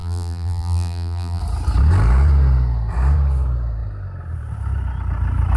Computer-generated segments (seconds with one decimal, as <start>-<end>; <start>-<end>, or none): 0.0-1.4